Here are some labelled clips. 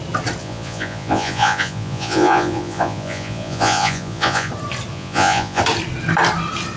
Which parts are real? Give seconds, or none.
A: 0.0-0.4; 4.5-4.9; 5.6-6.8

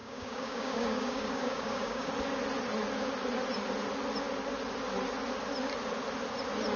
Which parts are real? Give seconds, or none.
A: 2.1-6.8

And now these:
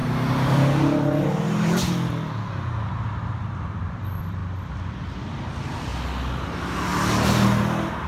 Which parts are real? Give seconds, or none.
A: 0.0-2.9; 5.9-7.6

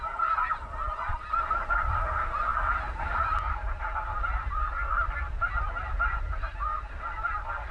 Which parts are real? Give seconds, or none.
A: 0.0-7.7

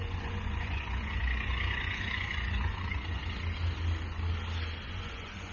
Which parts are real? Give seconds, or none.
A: 3.2-4.9

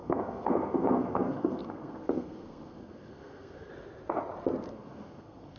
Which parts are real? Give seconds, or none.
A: 3.7-4.7